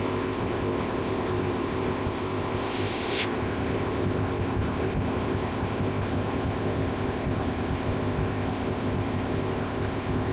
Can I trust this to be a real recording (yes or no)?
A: no